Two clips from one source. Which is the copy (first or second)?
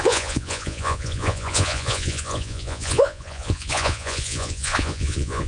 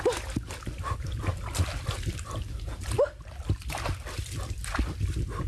first